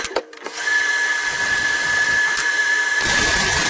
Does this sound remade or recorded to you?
remade